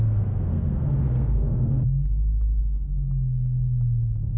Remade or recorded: remade